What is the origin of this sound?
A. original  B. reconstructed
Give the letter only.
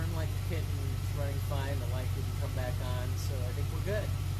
A